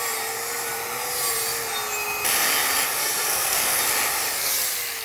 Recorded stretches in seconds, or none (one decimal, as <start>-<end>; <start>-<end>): 0.0-3.0; 3.8-5.0